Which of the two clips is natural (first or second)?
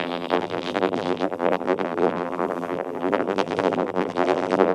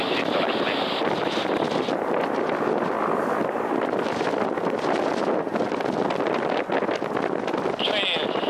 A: second